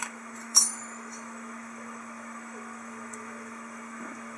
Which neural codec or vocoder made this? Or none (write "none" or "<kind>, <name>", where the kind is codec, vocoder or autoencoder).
autoencoder, DAC-VAE